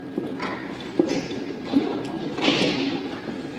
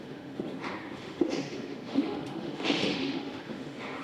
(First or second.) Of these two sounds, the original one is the first